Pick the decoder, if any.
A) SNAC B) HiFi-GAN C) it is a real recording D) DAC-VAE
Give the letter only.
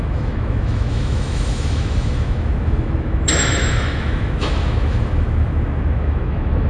D